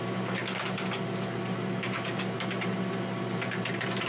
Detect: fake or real real